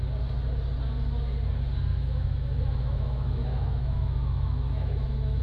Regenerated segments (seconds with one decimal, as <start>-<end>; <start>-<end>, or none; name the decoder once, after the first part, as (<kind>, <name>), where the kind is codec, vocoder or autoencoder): 1.9-5.4 (autoencoder, DAC-VAE)